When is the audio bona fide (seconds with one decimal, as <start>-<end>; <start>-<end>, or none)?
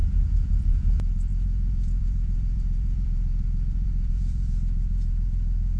none